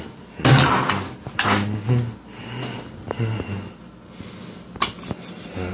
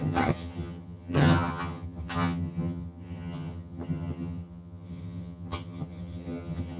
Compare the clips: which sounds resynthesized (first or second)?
second